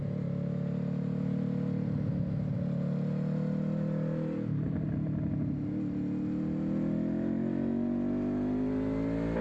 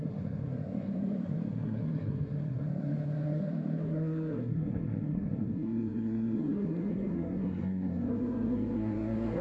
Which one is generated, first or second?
second